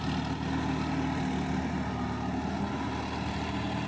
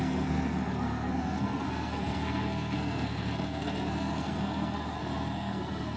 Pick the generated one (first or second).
second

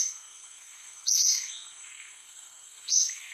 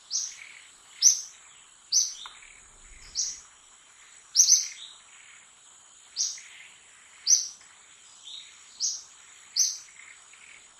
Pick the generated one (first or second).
first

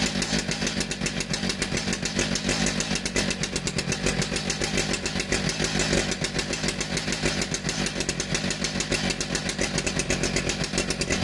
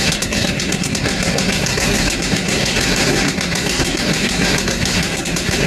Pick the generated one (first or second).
second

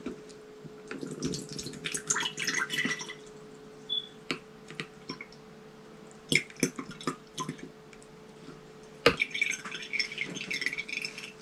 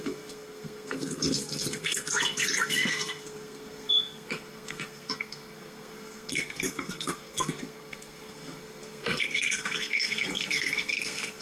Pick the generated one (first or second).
second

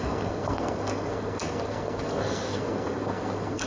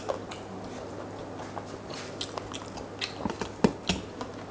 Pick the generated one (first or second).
first